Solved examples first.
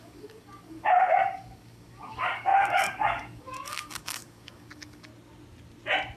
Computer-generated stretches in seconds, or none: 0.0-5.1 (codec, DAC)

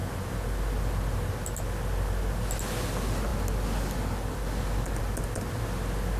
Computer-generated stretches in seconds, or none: none

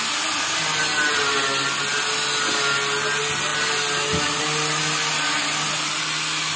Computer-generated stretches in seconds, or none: none